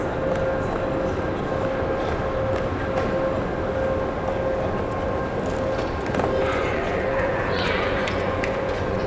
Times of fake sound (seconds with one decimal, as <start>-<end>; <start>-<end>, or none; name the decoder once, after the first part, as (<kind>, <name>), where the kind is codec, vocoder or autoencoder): 6.5-9.1 (vocoder, Vocos)